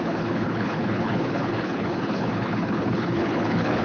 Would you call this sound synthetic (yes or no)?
yes